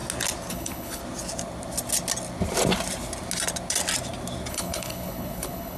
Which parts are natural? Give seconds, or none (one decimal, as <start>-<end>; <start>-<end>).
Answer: 0.0-0.5; 1.0-4.5